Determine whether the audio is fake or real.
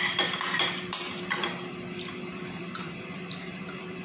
fake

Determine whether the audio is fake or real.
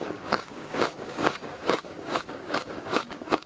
fake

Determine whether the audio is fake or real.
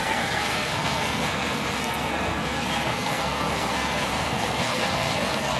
fake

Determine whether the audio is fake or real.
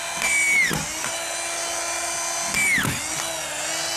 real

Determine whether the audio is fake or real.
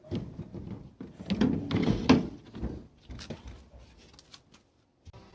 real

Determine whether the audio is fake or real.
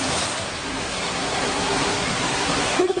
fake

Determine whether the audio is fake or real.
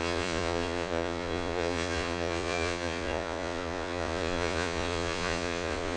fake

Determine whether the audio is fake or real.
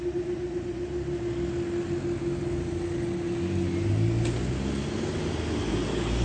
real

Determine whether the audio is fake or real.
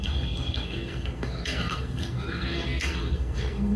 fake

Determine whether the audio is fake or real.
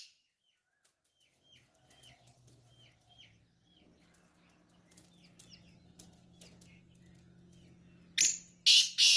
real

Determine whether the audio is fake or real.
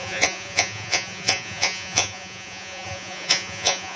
fake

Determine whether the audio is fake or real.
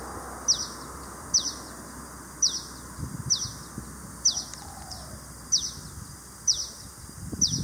real